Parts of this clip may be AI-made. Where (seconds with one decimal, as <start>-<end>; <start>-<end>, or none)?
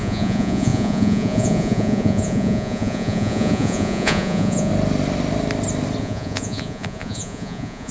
0.0-4.7; 6.0-7.9